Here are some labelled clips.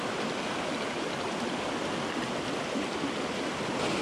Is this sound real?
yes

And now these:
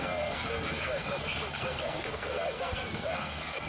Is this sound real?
no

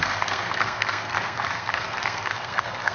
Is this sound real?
no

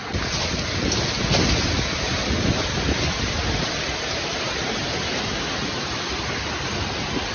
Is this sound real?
yes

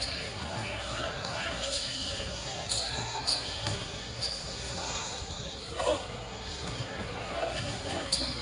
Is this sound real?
no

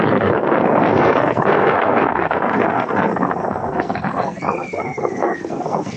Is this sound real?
no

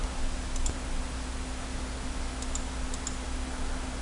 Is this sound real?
yes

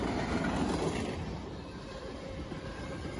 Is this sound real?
yes